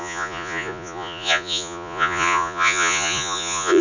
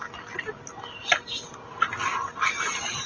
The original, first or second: second